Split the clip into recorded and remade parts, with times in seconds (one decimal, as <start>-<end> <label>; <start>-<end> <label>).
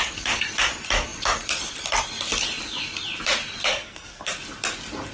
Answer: 0.0-3.7 recorded; 3.7-4.3 remade; 4.3-5.1 recorded